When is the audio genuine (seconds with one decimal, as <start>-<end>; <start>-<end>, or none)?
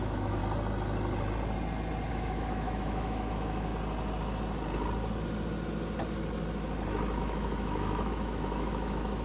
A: 0.4-2.1; 3.7-7.2